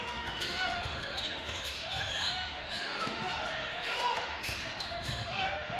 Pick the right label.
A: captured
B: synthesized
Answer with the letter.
B